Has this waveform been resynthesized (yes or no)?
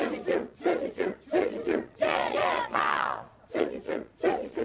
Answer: yes